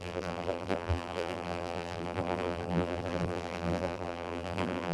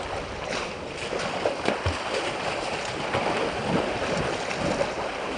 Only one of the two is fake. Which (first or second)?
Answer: first